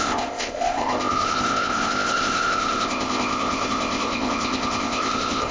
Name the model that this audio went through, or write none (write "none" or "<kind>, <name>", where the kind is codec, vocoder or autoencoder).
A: codec, ZipCodec